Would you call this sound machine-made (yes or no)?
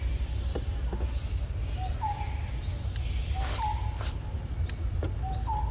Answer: no